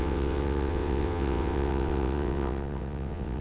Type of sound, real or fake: fake